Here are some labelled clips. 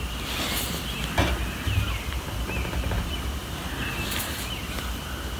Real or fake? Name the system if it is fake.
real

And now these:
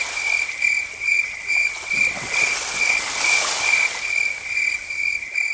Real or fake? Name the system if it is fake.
real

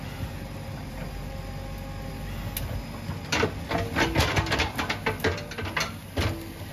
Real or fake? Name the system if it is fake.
real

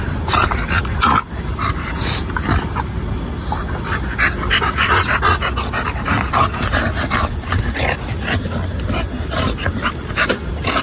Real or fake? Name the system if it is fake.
real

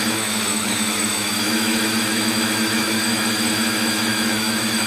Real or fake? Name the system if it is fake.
fake, autoencoder, DAC-VAE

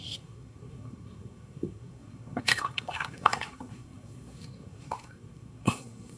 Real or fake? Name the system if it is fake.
fake, codec, SNAC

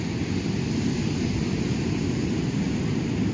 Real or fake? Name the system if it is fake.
real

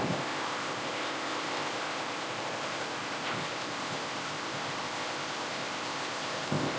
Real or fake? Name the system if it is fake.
fake, codec, ZipCodec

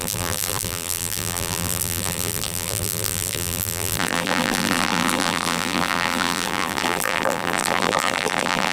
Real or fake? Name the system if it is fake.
fake, vocoder, BigVGAN v2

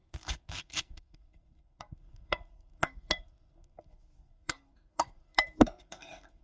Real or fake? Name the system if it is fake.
fake, codec, SNAC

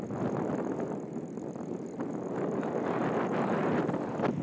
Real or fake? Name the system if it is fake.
real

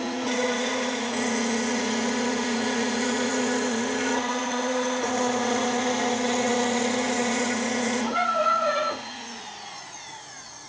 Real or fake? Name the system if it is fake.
fake, vocoder, Vocos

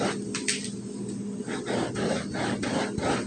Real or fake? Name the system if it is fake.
fake, vocoder, BigVGAN v2